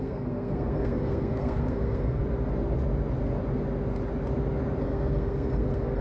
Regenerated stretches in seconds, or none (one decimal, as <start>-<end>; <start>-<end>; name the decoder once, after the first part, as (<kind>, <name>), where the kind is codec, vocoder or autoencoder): 0.0-2.2 (codec, SNAC); 4.8-6.0